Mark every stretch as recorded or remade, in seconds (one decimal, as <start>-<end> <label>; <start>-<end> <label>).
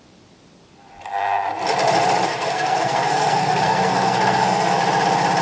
0.0-2.3 recorded; 2.3-4.8 remade; 4.8-5.4 recorded